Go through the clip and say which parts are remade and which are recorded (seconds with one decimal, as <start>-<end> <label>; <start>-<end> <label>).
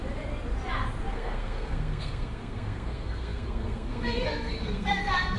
0.0-1.1 recorded; 1.1-5.4 remade